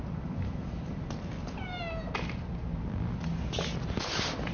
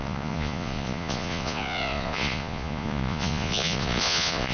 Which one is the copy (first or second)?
second